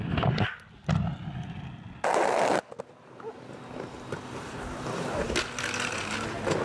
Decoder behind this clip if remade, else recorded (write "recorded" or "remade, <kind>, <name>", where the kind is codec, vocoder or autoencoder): recorded